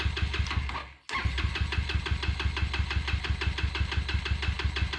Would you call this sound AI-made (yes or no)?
no